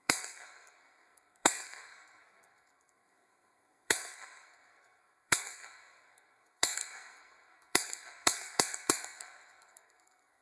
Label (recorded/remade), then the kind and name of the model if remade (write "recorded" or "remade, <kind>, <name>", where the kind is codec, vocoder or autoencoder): remade, codec, SNAC